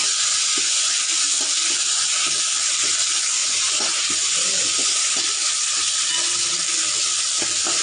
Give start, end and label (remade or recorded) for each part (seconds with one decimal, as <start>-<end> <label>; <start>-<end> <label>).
0.0-0.9 remade; 0.9-3.4 recorded; 3.4-5.1 remade; 5.1-7.8 recorded